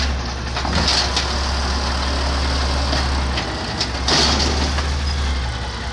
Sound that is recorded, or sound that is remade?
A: recorded